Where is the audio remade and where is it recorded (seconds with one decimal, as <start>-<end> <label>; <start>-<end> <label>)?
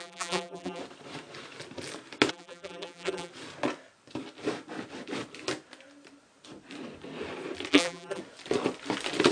0.0-0.8 remade; 0.8-2.3 recorded; 2.3-3.3 remade; 3.3-7.7 recorded; 7.7-8.2 remade; 8.2-9.3 recorded